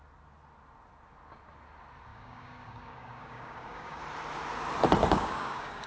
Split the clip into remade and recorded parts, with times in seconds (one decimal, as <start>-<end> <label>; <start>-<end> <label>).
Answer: 0.0-2.1 recorded; 2.1-4.0 remade; 4.0-5.0 recorded; 5.0-5.9 remade